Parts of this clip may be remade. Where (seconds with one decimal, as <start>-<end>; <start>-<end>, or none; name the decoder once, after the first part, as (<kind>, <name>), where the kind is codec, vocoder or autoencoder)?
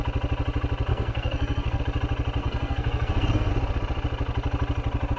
0.9-1.8 (codec, SNAC); 2.4-3.5